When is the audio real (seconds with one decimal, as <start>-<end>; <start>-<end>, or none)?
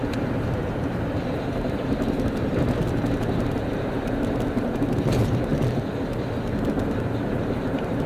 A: 5.5-7.6